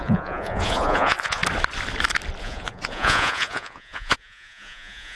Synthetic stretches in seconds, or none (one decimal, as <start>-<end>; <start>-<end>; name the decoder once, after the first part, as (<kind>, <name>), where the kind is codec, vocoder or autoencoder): 0.0-1.4 (vocoder, Vocos); 2.4-5.2

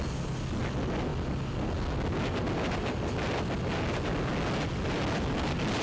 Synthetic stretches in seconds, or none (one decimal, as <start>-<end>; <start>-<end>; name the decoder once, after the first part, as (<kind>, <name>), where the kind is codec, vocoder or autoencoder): none

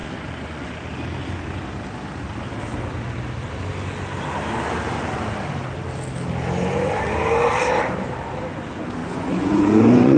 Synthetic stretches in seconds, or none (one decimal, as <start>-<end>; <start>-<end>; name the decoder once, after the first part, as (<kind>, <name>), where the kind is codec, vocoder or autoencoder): 0.0-0.7 (vocoder, Vocos); 9.0-10.2